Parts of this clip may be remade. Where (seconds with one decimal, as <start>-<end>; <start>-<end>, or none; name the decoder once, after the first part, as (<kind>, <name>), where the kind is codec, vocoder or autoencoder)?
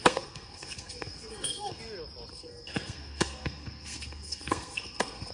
0.0-1.8 (codec, SNAC); 2.3-5.3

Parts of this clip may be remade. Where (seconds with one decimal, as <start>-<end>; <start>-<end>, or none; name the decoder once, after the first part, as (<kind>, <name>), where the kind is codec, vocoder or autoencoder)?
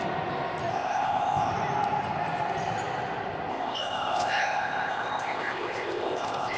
0.7-1.5 (codec, ZipCodec); 3.5-6.6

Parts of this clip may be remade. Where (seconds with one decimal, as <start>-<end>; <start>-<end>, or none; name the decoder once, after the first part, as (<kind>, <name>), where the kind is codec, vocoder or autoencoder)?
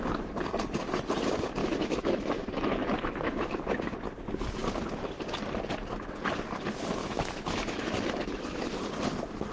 1.6-3.7 (autoencoder, DAC-VAE); 7.0-8.8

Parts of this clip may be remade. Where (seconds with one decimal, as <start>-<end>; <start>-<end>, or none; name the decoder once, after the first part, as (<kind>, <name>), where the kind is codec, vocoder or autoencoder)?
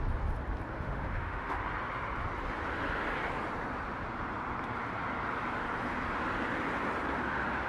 0.7-1.6 (autoencoder, DAC-VAE)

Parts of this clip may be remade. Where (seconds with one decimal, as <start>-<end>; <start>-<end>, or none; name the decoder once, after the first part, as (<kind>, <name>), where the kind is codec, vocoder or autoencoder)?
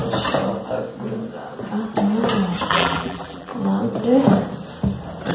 2.7-3.5 (vocoder, BigVGAN v2)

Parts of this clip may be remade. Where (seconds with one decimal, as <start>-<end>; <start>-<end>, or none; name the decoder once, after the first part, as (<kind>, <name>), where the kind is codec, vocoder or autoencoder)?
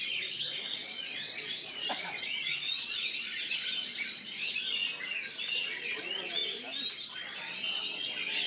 0.0-4.8 (vocoder, Vocos); 5.5-6.4; 7.1-8.5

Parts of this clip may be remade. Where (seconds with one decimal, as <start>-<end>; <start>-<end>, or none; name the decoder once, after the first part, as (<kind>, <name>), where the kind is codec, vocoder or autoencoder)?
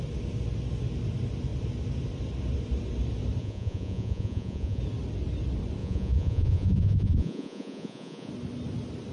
3.4-4.8 (vocoder, Vocos); 5.8-8.3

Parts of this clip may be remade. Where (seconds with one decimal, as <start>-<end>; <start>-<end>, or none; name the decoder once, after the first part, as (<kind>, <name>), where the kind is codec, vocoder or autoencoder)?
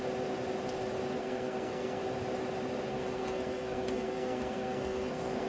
1.2-2.0 (codec, SNAC); 2.9-5.5